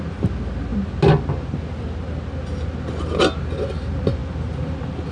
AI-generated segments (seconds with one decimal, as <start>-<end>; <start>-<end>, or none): none